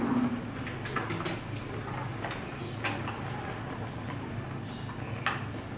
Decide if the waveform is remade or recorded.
recorded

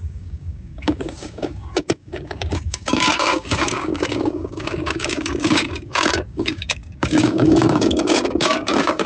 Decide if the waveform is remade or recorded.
remade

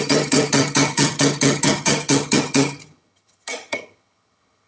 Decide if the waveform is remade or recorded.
remade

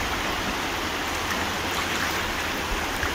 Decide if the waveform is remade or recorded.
remade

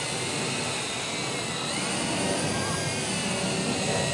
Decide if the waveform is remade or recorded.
recorded